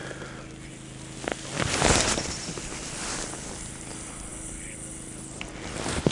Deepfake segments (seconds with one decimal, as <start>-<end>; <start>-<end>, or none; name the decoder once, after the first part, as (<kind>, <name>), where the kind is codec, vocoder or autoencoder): none